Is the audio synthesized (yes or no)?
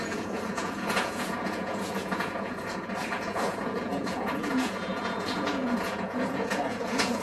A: yes